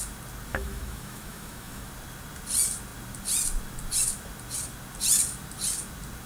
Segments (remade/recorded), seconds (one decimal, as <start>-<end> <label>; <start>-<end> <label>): 0.0-0.5 recorded; 0.5-1.9 remade; 1.9-6.3 recorded